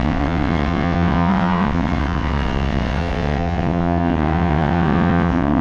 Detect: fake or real fake